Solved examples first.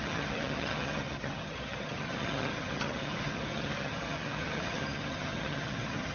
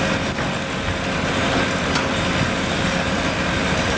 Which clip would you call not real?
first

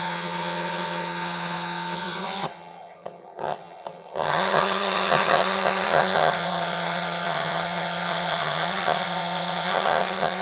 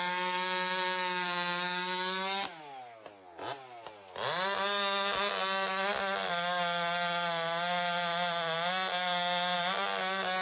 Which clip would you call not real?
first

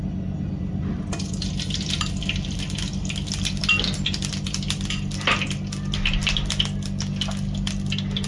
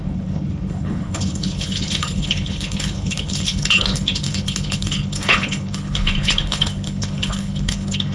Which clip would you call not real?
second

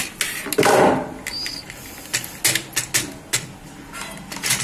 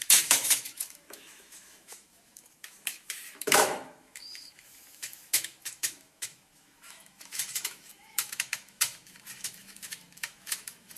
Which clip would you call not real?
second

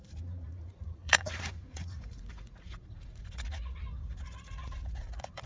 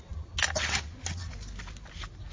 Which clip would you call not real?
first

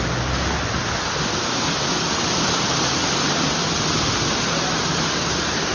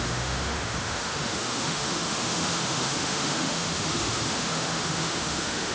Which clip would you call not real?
second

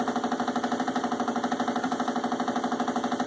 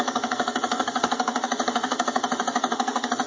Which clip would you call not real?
second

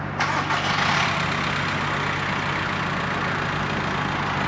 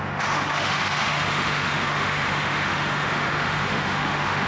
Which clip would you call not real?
second